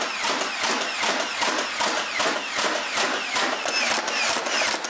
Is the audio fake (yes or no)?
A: no